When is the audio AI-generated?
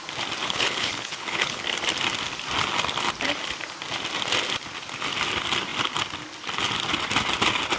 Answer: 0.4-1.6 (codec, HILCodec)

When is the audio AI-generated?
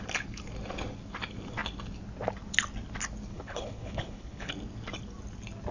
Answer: 3.3-4.5 (codec, HILCodec)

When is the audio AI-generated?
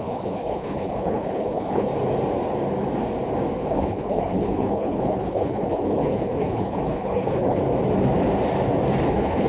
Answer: 0.0-1.9 (codec, HILCodec); 3.7-7.6; 9.1-9.5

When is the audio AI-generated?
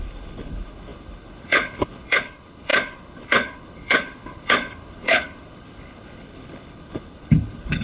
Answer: 0.0-7.8 (codec, HILCodec)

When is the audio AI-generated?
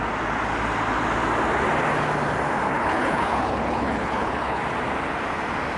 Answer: 2.7-4.6 (codec, HILCodec)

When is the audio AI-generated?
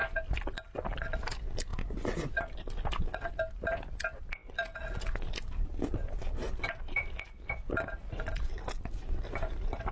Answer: none